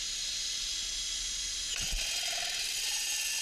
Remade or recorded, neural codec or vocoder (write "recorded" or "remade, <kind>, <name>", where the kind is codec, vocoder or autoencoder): recorded